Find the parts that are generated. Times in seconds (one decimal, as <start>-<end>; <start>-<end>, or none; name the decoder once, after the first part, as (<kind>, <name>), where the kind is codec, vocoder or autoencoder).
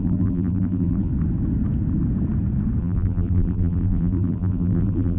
0.0-1.1 (vocoder, BigVGAN v2); 2.8-5.2